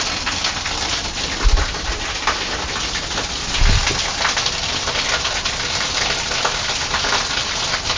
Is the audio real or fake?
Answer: real